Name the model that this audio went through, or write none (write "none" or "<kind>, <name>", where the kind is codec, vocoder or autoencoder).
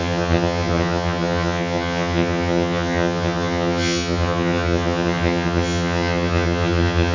vocoder, HiFi-GAN